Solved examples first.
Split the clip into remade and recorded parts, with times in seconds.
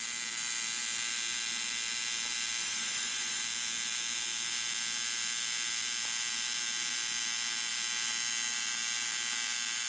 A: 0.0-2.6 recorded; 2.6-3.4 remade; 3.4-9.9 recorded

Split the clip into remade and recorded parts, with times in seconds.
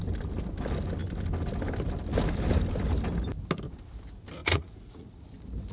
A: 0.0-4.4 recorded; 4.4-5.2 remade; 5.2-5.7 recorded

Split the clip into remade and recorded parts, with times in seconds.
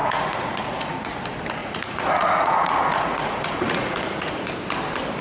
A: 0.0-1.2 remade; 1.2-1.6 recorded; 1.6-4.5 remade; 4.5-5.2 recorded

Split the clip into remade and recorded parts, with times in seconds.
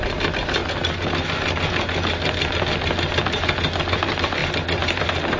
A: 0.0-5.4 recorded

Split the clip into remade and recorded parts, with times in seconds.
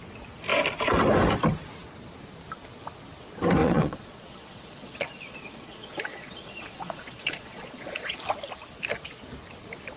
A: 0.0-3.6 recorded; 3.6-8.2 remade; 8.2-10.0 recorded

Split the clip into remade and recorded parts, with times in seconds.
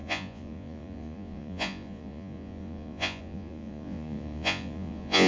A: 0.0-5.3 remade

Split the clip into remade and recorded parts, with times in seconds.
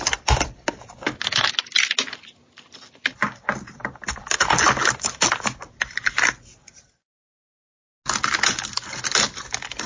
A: 0.0-9.9 recorded